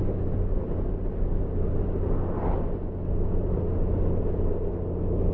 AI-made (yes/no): no